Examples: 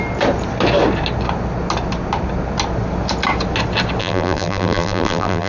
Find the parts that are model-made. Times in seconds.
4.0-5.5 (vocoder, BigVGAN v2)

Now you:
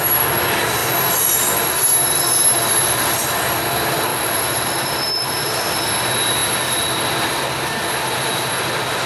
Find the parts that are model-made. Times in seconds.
4.1-5.9 (vocoder, BigVGAN v2)

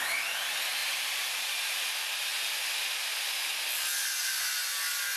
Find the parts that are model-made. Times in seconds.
0.8-1.8 (vocoder, BigVGAN v2)